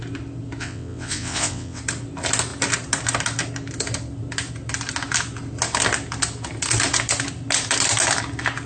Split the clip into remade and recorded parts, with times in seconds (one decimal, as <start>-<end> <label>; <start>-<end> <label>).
0.0-0.6 recorded; 0.6-1.8 remade; 1.8-8.7 recorded